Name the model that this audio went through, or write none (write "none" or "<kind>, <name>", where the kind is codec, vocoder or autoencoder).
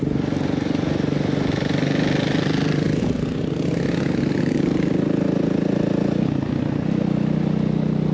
none